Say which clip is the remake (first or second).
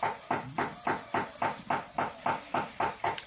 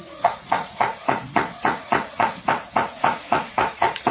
second